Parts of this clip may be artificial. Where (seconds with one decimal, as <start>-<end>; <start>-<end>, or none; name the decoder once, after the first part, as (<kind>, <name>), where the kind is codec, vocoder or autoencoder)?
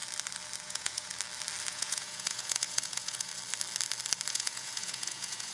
0.6-1.1 (vocoder, Vocos); 1.7-3.3; 4.3-5.5